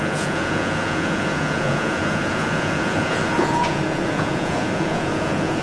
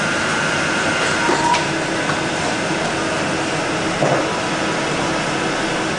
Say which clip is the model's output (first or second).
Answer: first